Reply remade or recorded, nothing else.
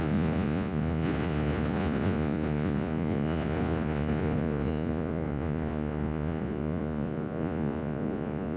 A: remade